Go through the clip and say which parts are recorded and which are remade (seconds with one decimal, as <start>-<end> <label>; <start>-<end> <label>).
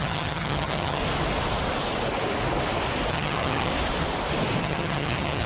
0.0-1.0 remade; 1.0-3.1 recorded; 3.1-3.7 remade; 3.7-4.6 recorded; 4.6-5.5 remade